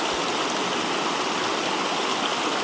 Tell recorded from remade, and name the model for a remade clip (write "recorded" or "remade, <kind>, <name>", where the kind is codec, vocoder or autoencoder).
recorded